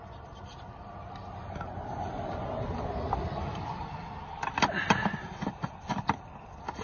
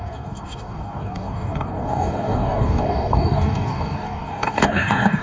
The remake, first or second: second